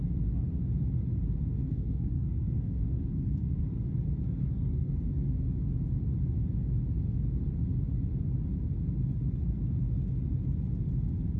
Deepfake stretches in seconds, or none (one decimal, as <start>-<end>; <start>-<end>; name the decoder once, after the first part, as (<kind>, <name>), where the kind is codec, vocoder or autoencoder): 1.6-3.6 (codec, SNAC); 4.4-4.9